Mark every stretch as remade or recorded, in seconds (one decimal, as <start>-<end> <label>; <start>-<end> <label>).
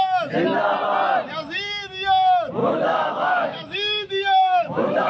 0.0-2.6 recorded; 2.6-5.1 remade